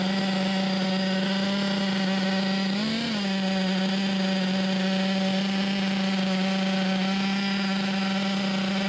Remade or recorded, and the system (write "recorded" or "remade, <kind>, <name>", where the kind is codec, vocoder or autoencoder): recorded